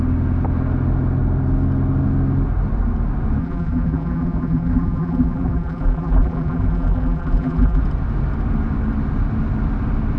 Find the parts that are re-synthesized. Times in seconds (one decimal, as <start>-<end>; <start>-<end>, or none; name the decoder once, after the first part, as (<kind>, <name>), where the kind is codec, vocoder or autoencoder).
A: 3.4-7.8 (vocoder, BigVGAN v2)